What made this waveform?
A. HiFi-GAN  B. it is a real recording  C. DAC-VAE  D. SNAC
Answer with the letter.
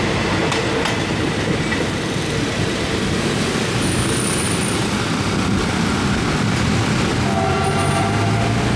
B